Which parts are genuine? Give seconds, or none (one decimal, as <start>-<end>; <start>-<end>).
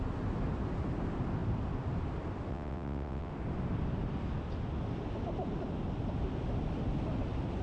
0.0-2.5; 3.3-7.6